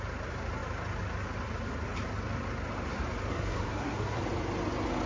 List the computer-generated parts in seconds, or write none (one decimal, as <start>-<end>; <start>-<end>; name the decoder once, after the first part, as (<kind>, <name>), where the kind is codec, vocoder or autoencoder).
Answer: 3.3-4.2 (codec, SNAC)